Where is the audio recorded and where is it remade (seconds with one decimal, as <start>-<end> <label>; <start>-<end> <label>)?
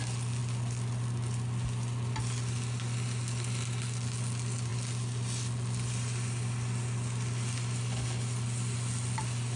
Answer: 0.0-9.6 recorded